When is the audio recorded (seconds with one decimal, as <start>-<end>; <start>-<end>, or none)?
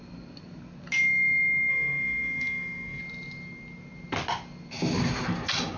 0.0-1.7; 3.0-5.8